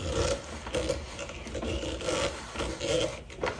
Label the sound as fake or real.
real